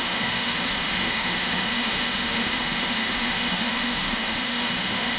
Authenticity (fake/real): fake